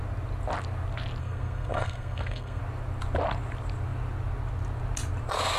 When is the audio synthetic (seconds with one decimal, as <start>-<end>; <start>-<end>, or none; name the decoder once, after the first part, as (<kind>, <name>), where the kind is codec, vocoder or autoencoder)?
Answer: 1.2-2.6 (codec, SNAC)

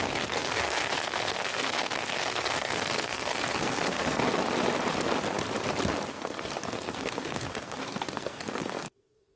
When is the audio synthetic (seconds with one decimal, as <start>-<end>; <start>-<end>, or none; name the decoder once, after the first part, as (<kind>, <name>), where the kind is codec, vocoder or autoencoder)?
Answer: 0.0-4.2 (codec, SNAC); 6.1-9.4

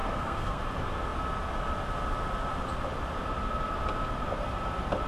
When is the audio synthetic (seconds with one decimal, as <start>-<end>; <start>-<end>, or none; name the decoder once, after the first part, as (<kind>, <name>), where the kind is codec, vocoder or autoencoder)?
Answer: 0.0-0.6 (codec, SNAC)

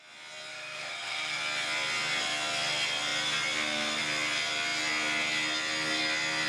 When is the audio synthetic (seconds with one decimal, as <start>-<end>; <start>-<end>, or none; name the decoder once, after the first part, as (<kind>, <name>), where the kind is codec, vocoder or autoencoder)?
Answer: 0.5-1.4 (codec, SNAC)

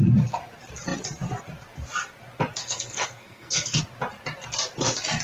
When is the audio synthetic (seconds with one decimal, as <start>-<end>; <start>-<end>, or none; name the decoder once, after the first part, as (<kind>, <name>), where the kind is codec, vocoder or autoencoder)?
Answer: 2.6-3.8 (codec, SNAC)

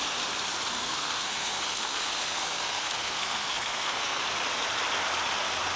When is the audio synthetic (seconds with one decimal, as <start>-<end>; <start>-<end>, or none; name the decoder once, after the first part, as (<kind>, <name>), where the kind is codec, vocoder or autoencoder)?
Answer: 0.7-4.2 (codec, SNAC)

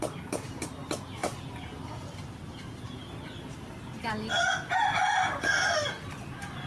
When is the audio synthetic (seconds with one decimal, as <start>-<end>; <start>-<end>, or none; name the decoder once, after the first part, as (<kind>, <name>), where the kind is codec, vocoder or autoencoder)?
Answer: none

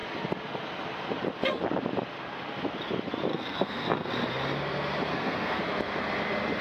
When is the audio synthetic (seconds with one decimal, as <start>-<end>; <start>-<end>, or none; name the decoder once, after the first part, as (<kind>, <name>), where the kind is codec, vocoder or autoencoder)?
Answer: 3.3-4.1 (codec, SNAC); 5.1-5.6